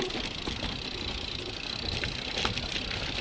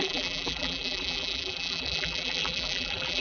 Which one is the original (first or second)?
first